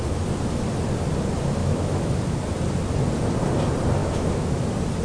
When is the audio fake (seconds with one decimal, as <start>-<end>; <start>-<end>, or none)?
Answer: 1.6-2.4; 4.0-4.6